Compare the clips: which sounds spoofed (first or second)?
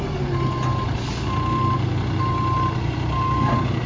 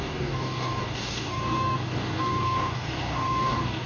second